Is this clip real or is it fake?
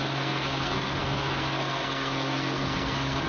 fake